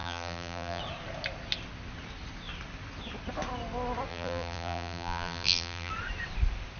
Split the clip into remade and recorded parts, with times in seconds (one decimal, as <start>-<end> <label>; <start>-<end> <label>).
0.0-0.8 remade; 0.8-4.1 recorded; 4.1-5.9 remade; 5.9-6.8 recorded